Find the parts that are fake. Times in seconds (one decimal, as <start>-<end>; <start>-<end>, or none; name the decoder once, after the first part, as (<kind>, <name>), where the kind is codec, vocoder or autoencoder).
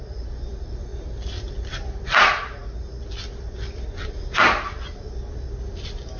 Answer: none